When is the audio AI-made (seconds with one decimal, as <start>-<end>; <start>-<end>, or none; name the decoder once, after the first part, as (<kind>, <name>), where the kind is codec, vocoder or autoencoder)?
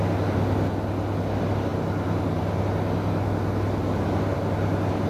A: none